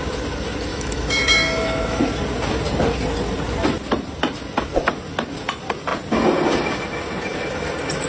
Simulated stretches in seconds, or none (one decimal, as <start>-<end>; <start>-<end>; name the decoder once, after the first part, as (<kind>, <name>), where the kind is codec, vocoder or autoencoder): 0.7-2.0 (autoencoder, DAC-VAE)